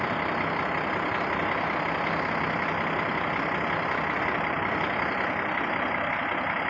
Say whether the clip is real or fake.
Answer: real